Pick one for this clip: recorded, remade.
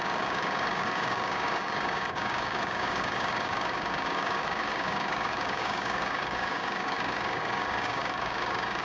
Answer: remade